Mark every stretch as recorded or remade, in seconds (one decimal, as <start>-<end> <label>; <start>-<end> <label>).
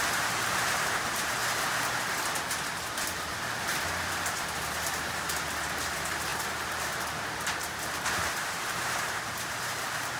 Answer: 0.0-1.4 remade; 1.4-5.1 recorded; 5.1-10.2 remade